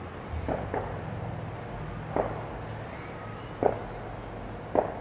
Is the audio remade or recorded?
recorded